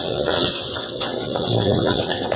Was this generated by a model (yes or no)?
yes